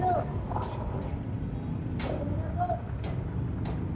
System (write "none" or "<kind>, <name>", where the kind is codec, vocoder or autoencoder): none